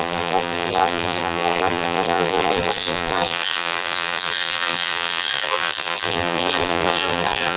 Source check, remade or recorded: remade